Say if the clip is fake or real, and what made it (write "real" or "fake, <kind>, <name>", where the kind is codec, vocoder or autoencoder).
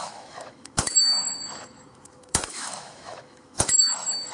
fake, autoencoder, DAC-VAE